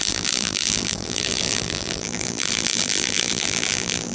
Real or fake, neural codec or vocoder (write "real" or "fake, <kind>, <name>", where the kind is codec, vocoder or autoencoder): fake, vocoder, BigVGAN v2